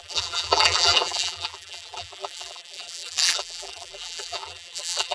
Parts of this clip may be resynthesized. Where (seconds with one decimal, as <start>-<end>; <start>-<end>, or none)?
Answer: 0.0-5.1